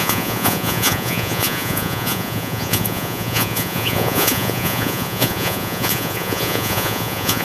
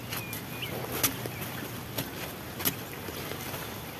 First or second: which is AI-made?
first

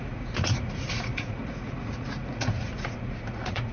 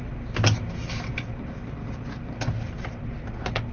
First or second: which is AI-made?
first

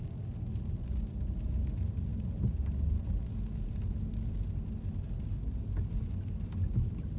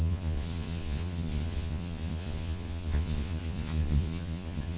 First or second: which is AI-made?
second